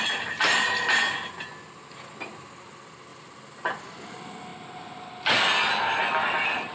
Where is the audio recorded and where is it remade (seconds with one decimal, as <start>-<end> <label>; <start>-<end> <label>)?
0.0-6.7 recorded